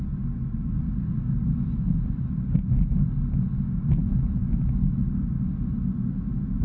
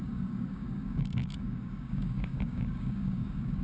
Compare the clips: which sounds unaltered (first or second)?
first